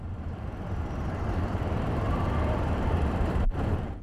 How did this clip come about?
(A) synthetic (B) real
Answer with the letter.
A